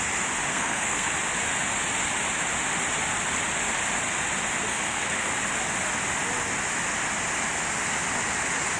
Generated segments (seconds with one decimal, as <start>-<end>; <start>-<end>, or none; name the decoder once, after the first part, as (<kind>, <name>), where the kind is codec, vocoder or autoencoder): 0.5-1.1 (codec, SNAC); 4.7-5.3